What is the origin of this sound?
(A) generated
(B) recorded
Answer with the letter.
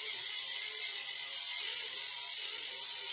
A